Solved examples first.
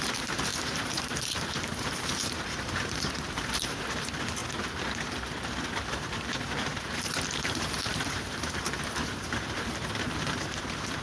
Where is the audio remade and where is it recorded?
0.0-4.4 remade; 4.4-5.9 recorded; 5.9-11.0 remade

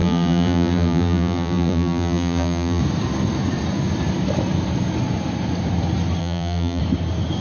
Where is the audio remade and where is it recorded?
0.0-2.8 remade; 2.8-6.2 recorded; 6.2-6.8 remade; 6.8-7.4 recorded

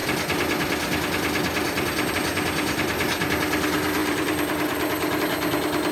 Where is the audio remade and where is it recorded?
0.0-4.0 recorded; 4.0-5.2 remade; 5.2-5.9 recorded

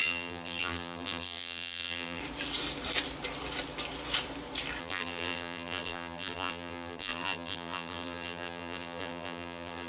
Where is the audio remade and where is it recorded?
0.0-2.2 remade; 2.2-4.8 recorded; 4.8-9.9 remade